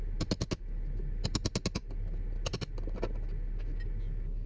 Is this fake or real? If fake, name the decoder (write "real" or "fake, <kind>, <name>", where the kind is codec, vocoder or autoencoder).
real